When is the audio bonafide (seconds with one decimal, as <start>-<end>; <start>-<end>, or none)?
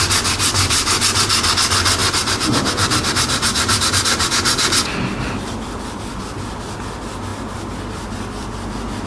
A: 0.0-2.0; 3.9-9.1